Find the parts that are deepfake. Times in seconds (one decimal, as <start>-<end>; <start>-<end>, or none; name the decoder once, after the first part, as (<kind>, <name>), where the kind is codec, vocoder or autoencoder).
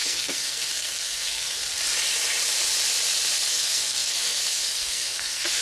0.0-1.6 (codec, SNAC); 3.5-5.6